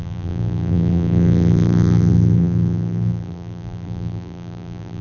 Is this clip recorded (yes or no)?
no